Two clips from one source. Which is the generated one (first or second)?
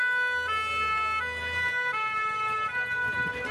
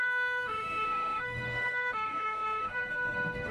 second